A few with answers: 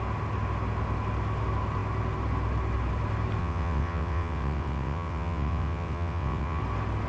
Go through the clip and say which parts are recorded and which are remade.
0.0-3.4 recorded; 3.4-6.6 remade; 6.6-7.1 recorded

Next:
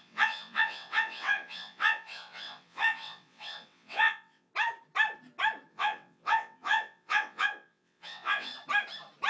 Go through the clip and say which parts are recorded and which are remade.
0.0-4.5 remade; 4.5-5.7 recorded; 5.7-8.5 remade; 8.5-9.3 recorded

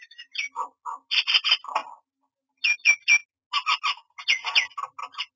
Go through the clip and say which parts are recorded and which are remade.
0.0-5.4 recorded

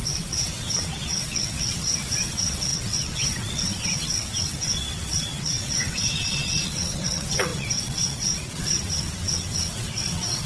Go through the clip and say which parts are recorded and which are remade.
0.0-10.5 remade

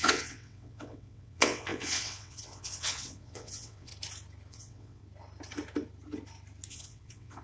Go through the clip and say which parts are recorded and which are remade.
0.0-3.9 remade; 3.9-4.5 recorded; 4.5-5.0 remade; 5.0-6.7 recorded; 6.7-7.4 remade

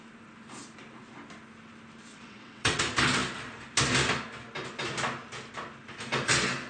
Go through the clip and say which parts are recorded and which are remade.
0.0-2.1 recorded; 2.1-2.8 remade; 2.8-6.7 recorded